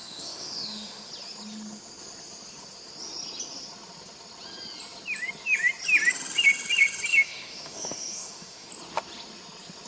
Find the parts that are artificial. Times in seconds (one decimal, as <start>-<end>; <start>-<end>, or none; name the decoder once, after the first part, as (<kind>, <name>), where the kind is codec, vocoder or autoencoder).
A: 0.0-1.1 (autoencoder, DAC-VAE); 7.1-8.7

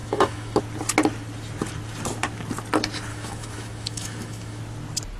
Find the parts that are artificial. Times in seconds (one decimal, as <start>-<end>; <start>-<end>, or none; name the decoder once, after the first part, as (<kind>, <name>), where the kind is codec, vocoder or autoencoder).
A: 0.0-0.6 (autoencoder, DAC-VAE); 3.1-4.6

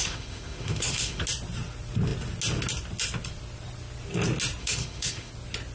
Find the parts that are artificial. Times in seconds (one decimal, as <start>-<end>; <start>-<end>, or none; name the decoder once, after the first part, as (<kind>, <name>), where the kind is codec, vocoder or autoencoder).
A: 0.0-1.2 (autoencoder, DAC-VAE); 4.6-5.3

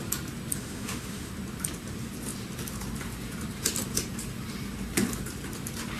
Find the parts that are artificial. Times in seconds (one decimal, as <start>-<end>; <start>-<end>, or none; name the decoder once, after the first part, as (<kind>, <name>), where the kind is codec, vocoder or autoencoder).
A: 0.6-1.3 (autoencoder, DAC-VAE)

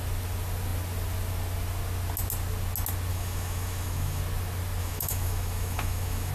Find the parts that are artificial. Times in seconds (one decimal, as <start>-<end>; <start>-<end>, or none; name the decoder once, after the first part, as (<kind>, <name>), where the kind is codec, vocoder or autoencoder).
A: 3.1-4.2 (autoencoder, DAC-VAE); 4.8-6.3

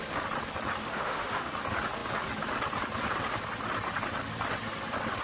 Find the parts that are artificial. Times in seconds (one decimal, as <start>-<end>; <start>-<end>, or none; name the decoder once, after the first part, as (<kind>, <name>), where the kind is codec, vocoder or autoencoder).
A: 0.8-1.5 (autoencoder, DAC-VAE)

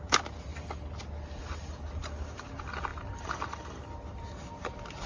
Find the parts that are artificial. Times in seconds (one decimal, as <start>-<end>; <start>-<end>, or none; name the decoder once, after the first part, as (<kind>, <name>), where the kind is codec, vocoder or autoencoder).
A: none

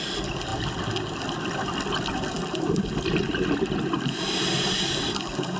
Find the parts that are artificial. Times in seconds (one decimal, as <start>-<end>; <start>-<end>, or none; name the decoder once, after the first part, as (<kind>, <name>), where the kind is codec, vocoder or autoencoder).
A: none